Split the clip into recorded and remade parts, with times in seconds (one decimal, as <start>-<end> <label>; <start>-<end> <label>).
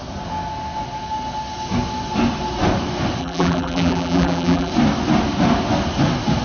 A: 0.0-3.2 recorded; 3.2-4.7 remade; 4.7-6.4 recorded